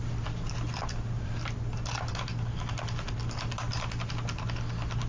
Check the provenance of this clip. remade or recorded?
recorded